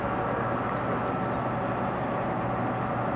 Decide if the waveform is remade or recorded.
recorded